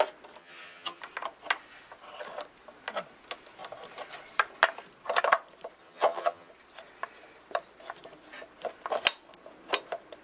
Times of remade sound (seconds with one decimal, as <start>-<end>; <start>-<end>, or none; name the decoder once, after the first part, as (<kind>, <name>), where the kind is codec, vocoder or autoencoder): 0.4-1.0 (vocoder, HiFi-GAN); 5.8-6.5